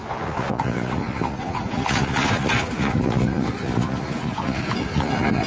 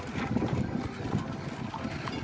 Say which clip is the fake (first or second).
first